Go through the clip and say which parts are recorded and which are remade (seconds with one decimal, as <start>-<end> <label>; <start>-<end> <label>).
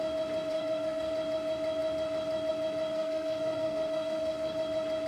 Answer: 0.0-0.5 recorded; 0.5-1.1 remade; 1.1-2.9 recorded; 2.9-4.6 remade; 4.6-5.1 recorded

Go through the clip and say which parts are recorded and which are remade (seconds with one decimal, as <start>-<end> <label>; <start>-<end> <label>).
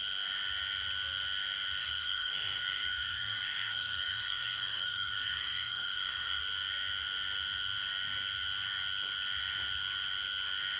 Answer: 0.0-1.8 recorded; 1.8-6.4 remade; 6.4-10.8 recorded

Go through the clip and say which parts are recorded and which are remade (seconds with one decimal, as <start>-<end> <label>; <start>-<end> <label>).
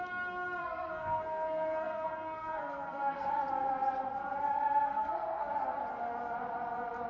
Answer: 0.0-0.6 recorded; 0.6-3.3 remade; 3.3-4.9 recorded; 4.9-5.5 remade; 5.5-7.1 recorded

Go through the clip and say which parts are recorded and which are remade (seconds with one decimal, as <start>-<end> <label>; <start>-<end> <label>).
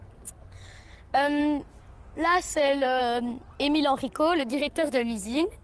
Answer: 0.0-1.4 remade; 1.4-2.6 recorded; 2.6-3.0 remade; 3.0-4.4 recorded; 4.4-5.6 remade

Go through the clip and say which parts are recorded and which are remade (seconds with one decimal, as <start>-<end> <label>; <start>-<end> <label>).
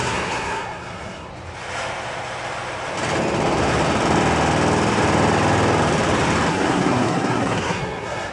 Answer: 0.0-1.3 remade; 1.3-6.5 recorded; 6.5-8.3 remade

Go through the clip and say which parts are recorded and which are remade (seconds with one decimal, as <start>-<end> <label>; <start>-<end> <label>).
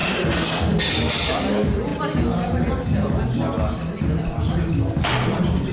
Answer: 0.0-5.7 recorded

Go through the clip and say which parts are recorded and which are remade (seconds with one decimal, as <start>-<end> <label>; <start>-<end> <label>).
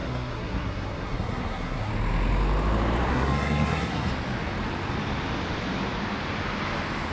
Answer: 0.0-1.9 remade; 1.9-3.1 recorded; 3.1-4.1 remade; 4.1-7.1 recorded